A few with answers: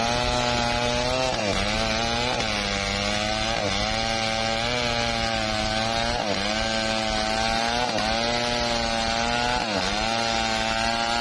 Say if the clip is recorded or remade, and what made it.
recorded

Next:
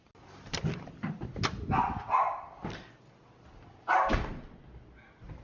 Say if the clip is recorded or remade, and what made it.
recorded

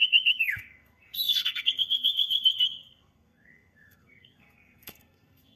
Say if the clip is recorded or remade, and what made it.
remade, codec, SNAC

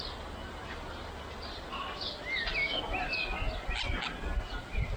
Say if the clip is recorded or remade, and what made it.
recorded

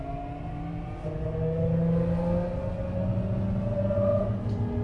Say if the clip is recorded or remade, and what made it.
recorded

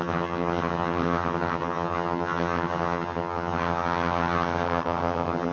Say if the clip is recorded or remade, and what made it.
remade, vocoder, HiFi-GAN